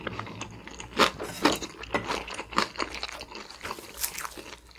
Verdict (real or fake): real